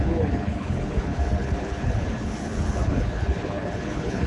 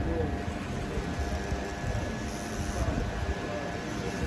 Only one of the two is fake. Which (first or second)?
first